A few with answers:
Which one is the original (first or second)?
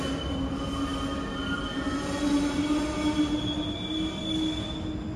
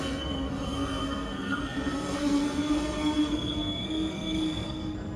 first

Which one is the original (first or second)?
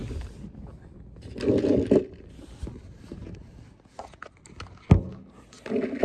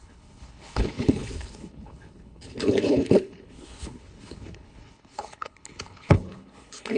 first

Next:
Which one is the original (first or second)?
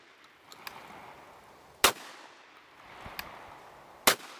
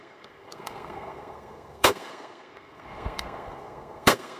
first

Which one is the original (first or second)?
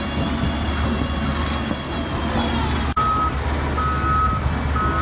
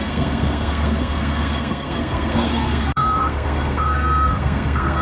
first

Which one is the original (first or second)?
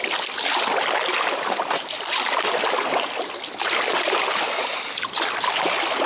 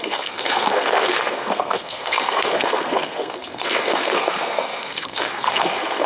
first